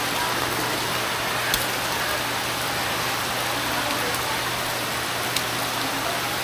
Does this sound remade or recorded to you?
recorded